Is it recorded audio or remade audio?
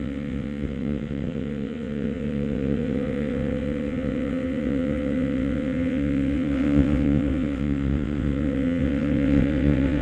remade